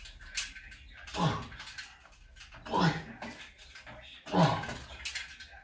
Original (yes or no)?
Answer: yes